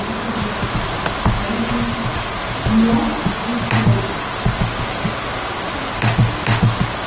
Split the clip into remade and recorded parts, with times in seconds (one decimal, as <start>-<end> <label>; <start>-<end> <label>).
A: 0.0-7.1 recorded